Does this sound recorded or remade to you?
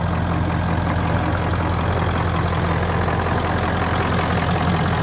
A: recorded